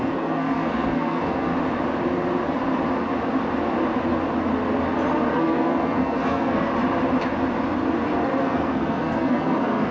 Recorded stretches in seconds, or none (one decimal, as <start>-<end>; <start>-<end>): 1.5-5.3; 6.7-8.4